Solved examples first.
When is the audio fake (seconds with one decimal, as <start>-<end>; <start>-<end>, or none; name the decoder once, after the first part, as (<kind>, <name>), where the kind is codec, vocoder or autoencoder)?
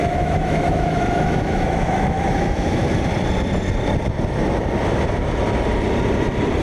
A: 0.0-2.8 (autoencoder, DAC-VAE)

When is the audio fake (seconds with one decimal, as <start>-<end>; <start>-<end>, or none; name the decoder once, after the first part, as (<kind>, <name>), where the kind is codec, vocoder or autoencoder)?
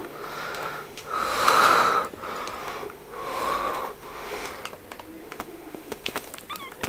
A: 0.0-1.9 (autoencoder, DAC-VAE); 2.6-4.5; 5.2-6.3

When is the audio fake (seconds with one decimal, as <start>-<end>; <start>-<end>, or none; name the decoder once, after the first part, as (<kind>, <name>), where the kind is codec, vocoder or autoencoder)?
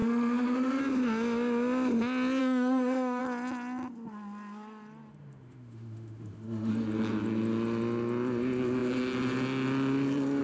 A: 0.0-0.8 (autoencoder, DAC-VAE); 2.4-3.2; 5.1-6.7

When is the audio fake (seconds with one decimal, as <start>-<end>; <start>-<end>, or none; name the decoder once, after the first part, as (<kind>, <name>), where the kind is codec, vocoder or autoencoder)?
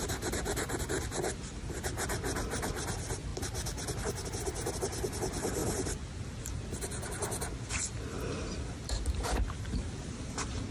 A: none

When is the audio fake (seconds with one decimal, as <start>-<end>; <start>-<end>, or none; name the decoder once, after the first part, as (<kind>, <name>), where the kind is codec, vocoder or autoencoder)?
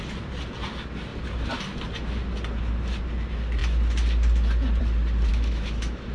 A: 5.3-6.1 (autoencoder, DAC-VAE)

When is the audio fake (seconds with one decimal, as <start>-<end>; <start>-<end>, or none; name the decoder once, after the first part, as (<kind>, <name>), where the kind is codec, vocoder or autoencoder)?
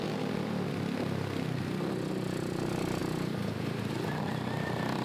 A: none